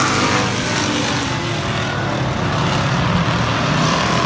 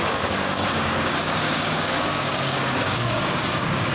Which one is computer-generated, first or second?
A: second